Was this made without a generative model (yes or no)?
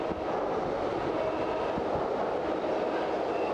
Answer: yes